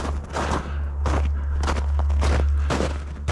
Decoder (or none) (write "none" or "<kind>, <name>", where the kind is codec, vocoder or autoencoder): none